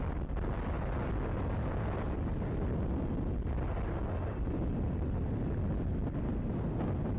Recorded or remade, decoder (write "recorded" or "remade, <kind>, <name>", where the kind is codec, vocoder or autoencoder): recorded